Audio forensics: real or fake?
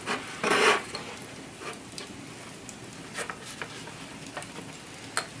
real